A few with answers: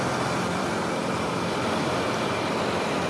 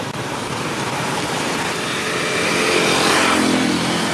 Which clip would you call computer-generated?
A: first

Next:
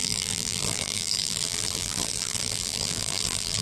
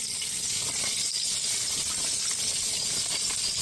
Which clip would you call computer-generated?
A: first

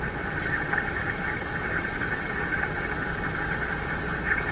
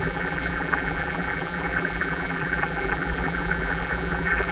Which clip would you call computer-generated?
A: second